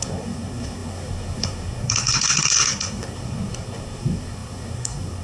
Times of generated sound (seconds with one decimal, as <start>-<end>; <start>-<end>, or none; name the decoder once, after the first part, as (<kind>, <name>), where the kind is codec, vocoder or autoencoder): 0.0-5.2 (codec, SNAC)